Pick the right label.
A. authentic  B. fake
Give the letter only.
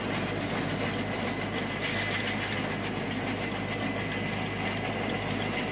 A